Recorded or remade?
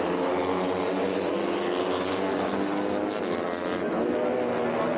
recorded